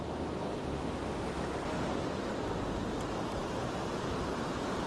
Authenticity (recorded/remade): recorded